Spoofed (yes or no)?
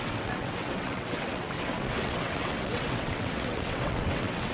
yes